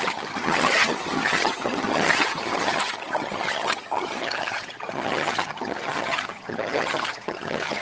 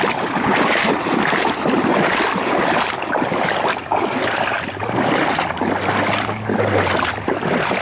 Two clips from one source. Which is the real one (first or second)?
second